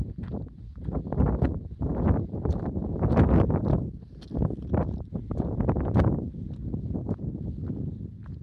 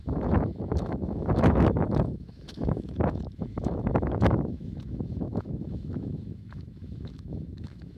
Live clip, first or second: first